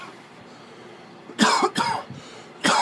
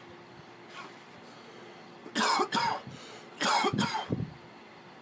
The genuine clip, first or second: second